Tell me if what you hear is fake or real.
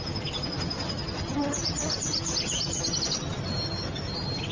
real